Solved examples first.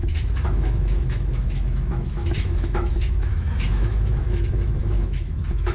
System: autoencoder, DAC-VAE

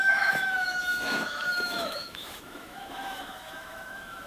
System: autoencoder, DAC-VAE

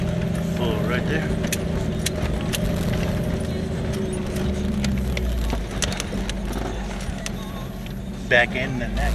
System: none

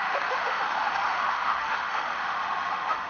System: autoencoder, DAC-VAE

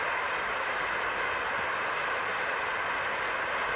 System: none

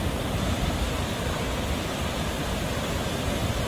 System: none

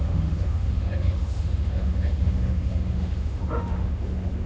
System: autoencoder, DAC-VAE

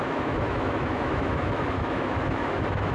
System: autoencoder, DAC-VAE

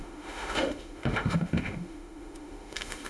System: autoencoder, DAC-VAE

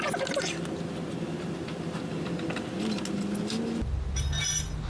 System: none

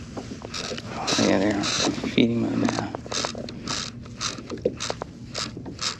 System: none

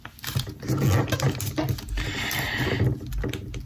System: none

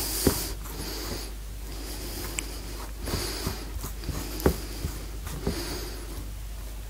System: none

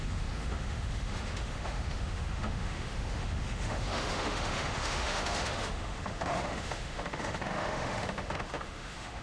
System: autoencoder, DAC-VAE